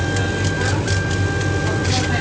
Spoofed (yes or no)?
no